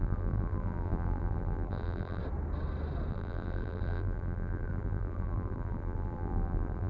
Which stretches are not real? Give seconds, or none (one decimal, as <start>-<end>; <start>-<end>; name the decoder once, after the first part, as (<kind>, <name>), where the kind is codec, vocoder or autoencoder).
0.0-2.2 (vocoder, BigVGAN v2); 3.1-6.9